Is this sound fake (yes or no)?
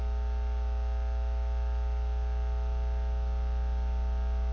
no